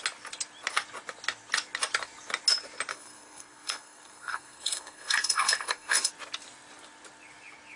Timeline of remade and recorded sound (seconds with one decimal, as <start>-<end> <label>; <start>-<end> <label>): 0.0-2.9 recorded; 2.9-6.1 remade; 6.1-7.8 recorded